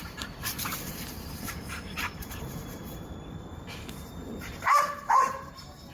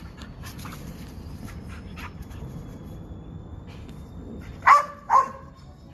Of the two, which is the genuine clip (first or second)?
second